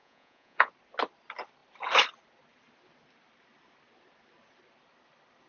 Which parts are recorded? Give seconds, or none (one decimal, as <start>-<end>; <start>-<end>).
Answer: 0.7-5.5